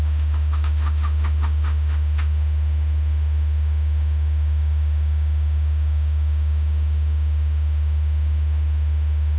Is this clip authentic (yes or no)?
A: no